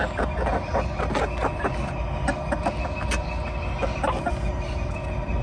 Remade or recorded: recorded